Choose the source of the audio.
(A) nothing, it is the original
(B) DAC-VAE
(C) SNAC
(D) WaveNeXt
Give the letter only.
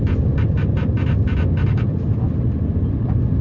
A